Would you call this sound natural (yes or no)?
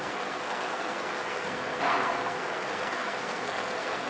no